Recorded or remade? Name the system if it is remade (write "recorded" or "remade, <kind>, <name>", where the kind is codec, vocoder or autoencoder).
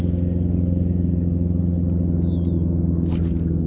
recorded